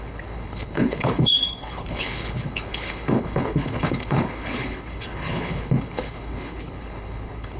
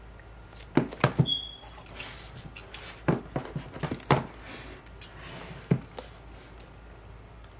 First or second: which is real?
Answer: second